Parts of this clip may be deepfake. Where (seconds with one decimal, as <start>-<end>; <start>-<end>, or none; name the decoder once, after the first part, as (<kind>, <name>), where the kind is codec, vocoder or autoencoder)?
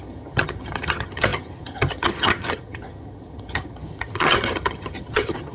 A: 0.0-5.5 (vocoder, HiFi-GAN)